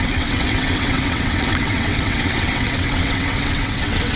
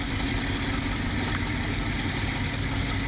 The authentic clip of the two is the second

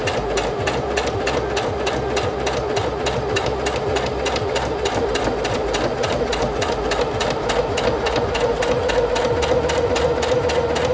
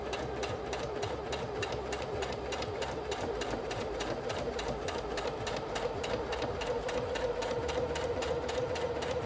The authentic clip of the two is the first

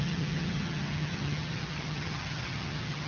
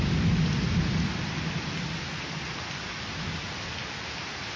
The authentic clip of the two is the second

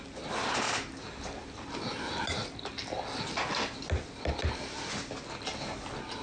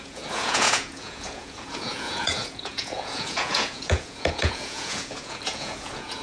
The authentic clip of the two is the first